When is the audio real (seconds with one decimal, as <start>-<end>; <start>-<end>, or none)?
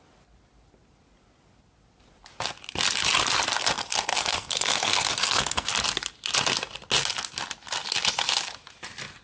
0.0-4.1; 5.7-9.2